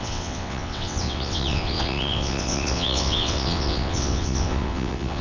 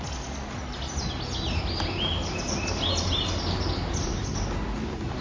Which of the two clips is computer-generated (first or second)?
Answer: first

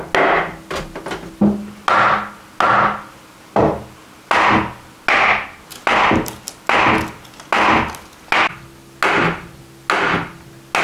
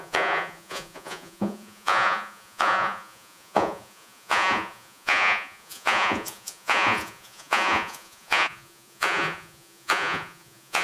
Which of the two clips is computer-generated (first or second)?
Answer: second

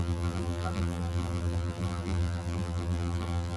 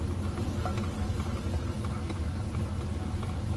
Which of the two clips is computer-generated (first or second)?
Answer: first